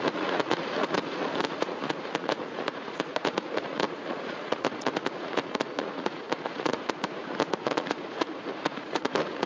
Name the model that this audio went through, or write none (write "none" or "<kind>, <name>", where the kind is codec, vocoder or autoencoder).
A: vocoder, Vocos